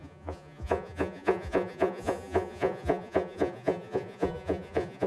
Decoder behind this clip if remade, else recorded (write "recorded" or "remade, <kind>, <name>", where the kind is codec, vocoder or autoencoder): remade, vocoder, Vocos